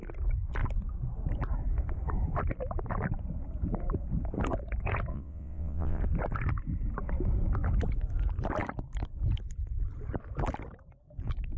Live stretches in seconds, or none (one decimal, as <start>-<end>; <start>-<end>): 0.0-5.1; 6.0-11.6